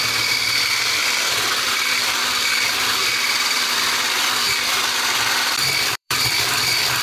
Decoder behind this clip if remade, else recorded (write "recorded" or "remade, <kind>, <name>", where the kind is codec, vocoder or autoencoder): remade, vocoder, BigVGAN v2